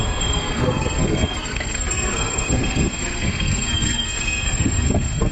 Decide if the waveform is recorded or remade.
remade